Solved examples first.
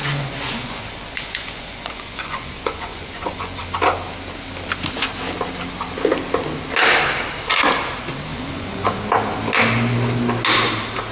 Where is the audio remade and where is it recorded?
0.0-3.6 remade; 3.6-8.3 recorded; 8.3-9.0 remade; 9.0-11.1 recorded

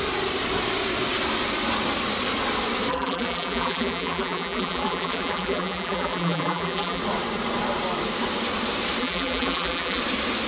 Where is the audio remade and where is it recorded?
0.0-2.9 recorded; 2.9-7.0 remade; 7.0-9.0 recorded; 9.0-10.0 remade; 10.0-10.5 recorded